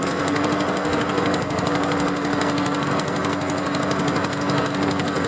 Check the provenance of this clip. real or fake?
fake